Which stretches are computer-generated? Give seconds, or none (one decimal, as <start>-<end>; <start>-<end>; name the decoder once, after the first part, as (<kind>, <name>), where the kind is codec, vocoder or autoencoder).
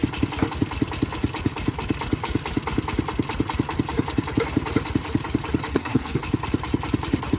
5.7-6.2 (codec, SNAC)